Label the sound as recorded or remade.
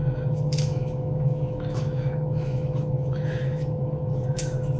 remade